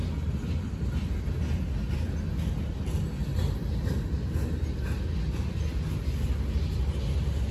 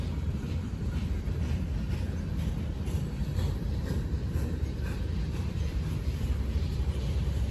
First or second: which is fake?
second